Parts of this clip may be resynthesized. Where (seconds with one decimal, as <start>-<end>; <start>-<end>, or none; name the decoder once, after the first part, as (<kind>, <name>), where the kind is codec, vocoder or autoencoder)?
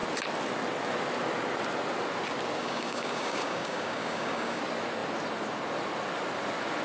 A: 2.6-4.6 (codec, DAC)